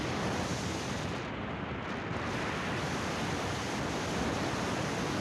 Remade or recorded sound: recorded